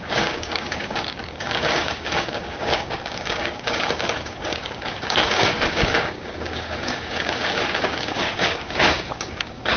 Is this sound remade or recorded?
remade